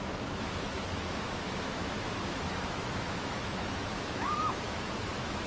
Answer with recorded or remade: remade